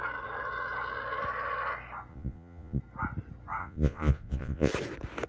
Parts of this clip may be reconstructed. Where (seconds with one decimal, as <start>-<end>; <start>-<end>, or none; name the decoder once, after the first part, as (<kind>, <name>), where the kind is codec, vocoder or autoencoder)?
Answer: 2.1-2.8 (vocoder, Vocos); 3.6-4.7